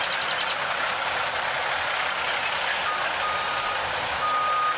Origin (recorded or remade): recorded